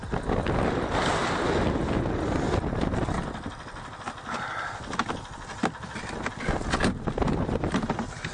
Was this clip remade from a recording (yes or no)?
no